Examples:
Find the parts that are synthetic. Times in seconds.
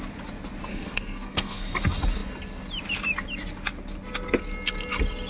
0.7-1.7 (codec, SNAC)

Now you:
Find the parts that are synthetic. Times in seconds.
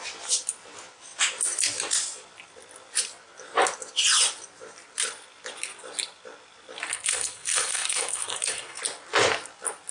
6.9-8.8 (codec, SNAC)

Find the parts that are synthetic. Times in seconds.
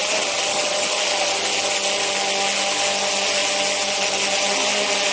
none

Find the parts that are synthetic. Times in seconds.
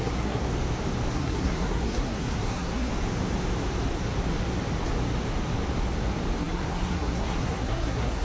0.0-0.4 (codec, SNAC); 1.1-2.9; 6.4-8.2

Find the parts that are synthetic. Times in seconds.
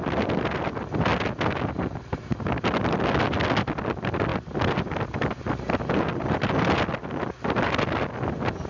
none